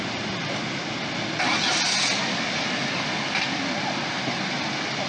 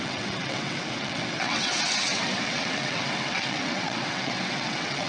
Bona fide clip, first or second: first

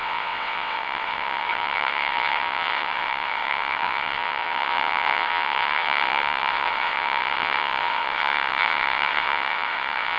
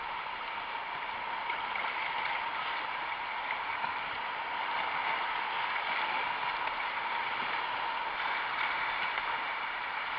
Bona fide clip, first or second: second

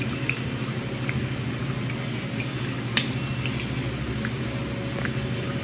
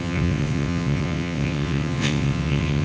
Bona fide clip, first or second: first